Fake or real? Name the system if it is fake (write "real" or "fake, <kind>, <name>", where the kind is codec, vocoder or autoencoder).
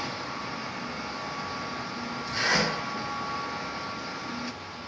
real